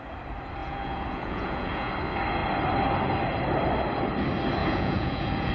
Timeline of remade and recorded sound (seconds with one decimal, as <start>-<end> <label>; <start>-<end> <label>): 0.0-0.6 recorded; 0.6-1.9 remade; 1.9-4.6 recorded; 4.6-5.5 remade